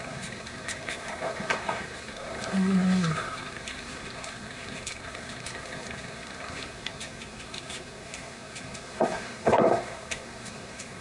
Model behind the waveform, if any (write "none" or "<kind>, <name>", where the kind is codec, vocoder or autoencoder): codec, SNAC